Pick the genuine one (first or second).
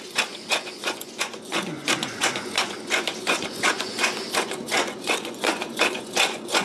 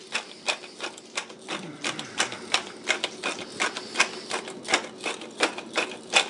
second